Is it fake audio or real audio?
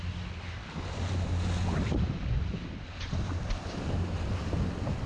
real